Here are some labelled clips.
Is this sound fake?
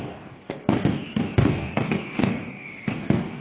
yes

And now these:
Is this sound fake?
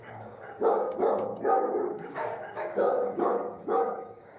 yes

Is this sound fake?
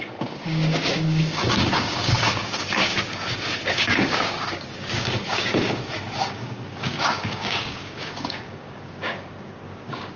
yes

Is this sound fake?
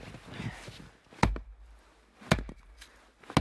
no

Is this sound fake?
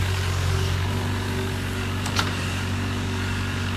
yes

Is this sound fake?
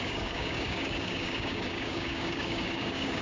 yes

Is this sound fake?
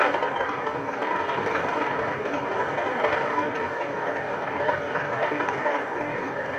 yes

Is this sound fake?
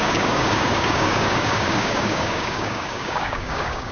yes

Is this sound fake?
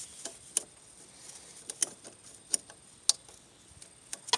no